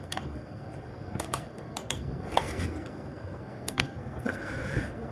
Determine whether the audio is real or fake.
fake